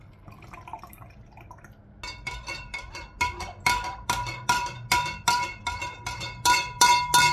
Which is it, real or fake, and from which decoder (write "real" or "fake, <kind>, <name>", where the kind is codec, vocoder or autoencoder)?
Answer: real